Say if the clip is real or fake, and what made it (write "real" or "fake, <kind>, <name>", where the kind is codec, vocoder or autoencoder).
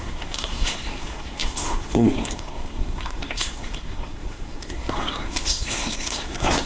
fake, codec, SNAC